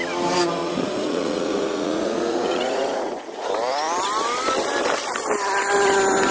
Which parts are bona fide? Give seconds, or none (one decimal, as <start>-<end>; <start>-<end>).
0.0-0.6; 3.5-6.3